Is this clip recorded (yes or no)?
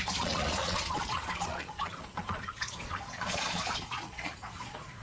no